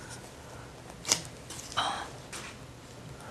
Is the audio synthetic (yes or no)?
no